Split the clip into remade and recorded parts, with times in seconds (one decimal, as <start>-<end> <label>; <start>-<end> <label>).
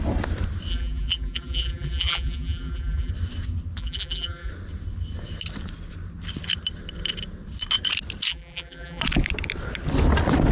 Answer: 0.0-0.7 recorded; 0.7-3.1 remade; 3.1-3.8 recorded; 3.8-4.5 remade; 4.5-8.3 recorded; 8.3-9.0 remade; 9.0-10.5 recorded